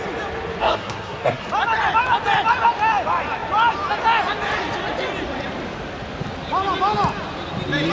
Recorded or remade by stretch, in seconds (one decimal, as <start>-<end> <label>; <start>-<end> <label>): 0.0-0.6 recorded; 0.6-1.5 remade; 1.5-7.9 recorded